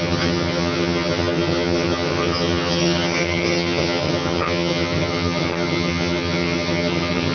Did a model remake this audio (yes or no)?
yes